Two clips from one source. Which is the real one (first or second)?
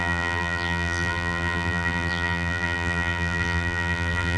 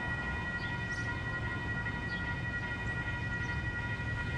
second